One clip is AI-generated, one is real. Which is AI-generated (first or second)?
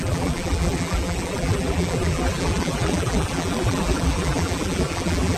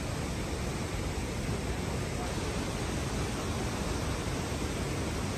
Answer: first